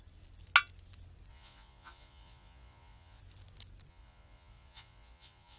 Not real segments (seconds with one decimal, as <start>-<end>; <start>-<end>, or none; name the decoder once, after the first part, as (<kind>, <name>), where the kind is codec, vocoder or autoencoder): 1.3-3.2 (vocoder, Vocos); 3.9-5.6